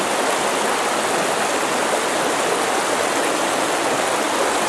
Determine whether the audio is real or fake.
real